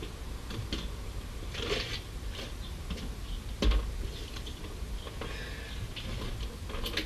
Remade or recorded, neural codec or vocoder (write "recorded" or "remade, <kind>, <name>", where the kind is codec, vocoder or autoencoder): recorded